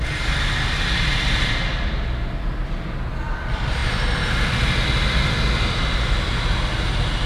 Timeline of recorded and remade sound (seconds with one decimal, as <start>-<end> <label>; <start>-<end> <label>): 0.0-7.3 recorded